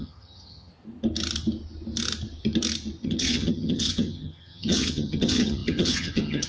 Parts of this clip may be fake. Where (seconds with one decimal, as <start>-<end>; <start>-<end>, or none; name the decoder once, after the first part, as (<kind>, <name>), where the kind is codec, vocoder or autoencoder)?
0.0-0.7 (vocoder, HiFi-GAN); 3.0-6.5